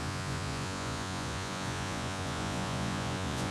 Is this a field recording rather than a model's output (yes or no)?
no